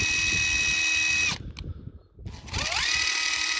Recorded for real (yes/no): yes